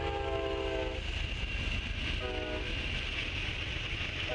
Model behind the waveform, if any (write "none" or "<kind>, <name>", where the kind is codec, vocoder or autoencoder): none